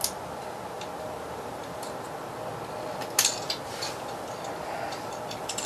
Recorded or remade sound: recorded